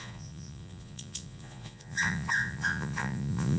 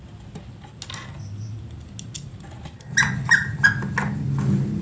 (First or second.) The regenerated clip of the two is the first